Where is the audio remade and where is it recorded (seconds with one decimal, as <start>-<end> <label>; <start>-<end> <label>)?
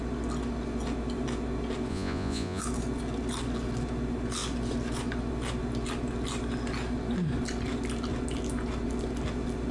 0.0-1.9 recorded; 1.9-2.6 remade; 2.6-9.7 recorded